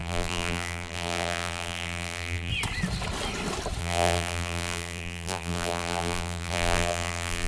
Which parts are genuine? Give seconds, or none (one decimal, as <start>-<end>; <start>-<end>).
2.5-3.8